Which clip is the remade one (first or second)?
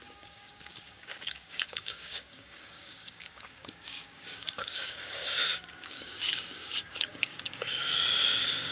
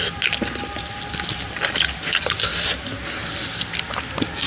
first